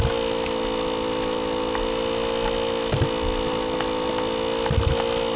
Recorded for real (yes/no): yes